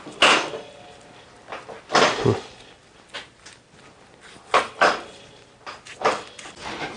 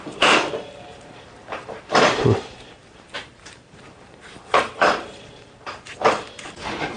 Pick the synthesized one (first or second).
second